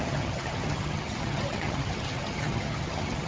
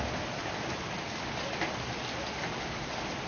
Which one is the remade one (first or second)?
first